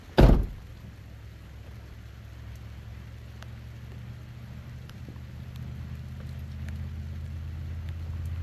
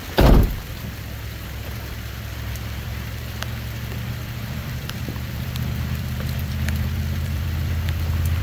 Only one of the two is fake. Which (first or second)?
second